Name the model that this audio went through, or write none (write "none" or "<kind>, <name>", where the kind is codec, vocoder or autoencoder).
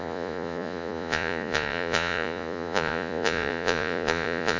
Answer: vocoder, Vocos